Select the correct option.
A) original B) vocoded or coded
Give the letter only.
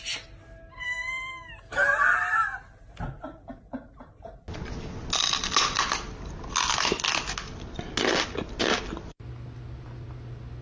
A